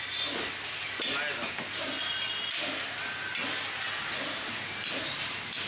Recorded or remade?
recorded